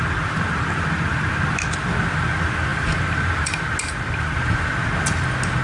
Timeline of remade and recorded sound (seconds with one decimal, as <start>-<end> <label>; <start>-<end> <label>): 0.0-5.6 recorded